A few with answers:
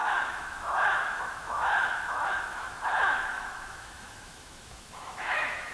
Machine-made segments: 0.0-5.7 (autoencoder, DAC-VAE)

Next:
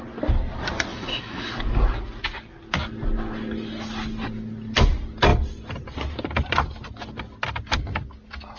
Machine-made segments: 0.9-1.5 (autoencoder, DAC-VAE)

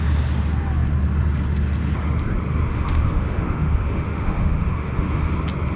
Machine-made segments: 2.7-5.3 (autoencoder, DAC-VAE)

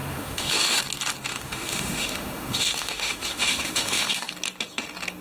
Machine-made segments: 0.0-0.8 (autoencoder, DAC-VAE); 1.3-4.3